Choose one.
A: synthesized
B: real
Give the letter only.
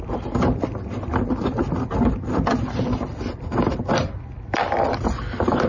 A